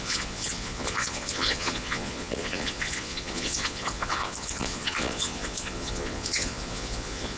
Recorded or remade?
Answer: remade